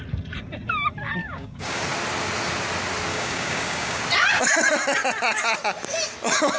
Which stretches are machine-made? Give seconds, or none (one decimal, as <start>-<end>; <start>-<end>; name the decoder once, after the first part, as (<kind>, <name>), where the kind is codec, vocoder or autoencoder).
1.2-1.8 (codec, DAC); 3.1-4.0